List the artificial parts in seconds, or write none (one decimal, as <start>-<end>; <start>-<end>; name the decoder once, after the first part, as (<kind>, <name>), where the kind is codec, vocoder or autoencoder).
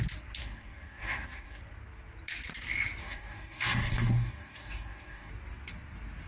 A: 0.4-1.6 (codec, DAC); 3.0-5.3